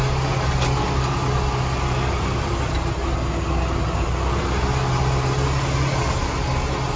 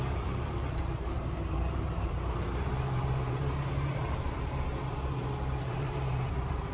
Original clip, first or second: first